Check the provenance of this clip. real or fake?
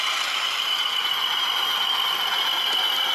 real